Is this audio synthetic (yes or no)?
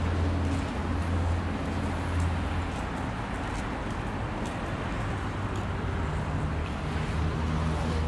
no